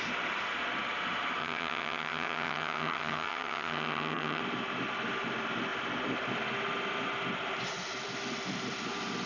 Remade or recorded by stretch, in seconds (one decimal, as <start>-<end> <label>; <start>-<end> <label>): 0.0-1.4 recorded; 1.4-4.4 remade; 4.4-9.3 recorded